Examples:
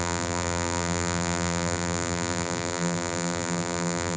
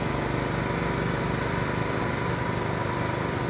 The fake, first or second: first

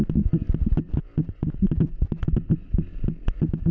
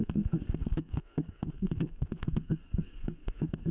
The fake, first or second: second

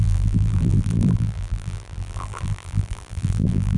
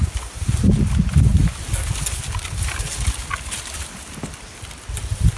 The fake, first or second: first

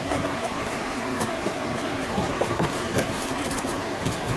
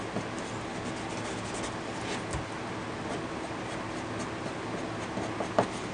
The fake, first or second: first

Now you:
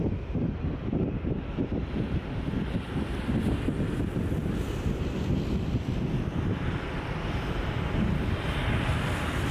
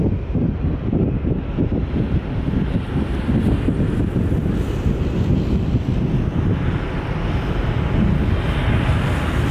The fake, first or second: first